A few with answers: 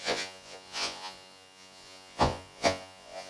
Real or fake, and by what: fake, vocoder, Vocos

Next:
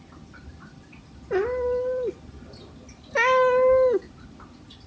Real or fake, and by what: real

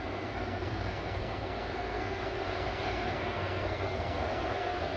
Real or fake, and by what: fake, codec, SNAC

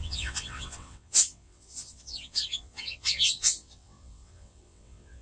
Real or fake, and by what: fake, vocoder, WaveNeXt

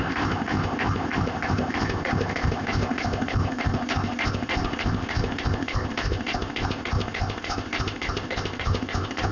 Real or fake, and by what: fake, codec, ZipCodec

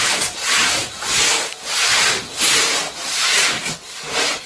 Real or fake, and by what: fake, vocoder, BigVGAN v2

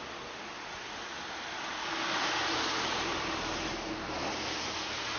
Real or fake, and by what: real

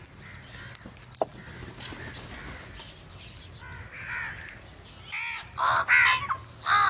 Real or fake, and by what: real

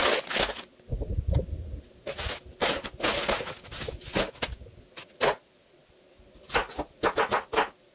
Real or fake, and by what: real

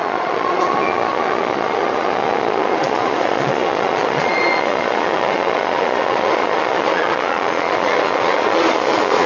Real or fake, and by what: fake, vocoder, Vocos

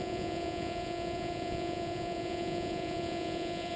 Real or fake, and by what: fake, vocoder, Vocos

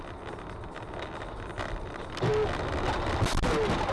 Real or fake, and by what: real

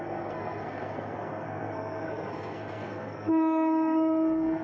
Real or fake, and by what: fake, codec, SNAC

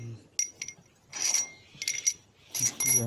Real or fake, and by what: real